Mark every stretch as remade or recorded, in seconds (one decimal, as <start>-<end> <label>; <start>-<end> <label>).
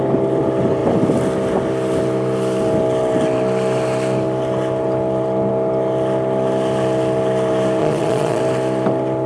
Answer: 0.0-7.8 recorded; 7.8-8.4 remade; 8.4-9.3 recorded